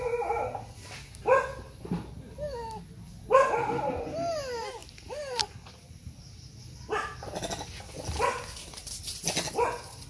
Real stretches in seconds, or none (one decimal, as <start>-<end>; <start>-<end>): 0.0-4.8; 6.6-10.1